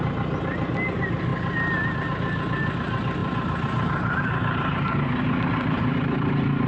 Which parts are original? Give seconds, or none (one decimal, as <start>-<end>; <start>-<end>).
0.0-3.2; 6.3-6.7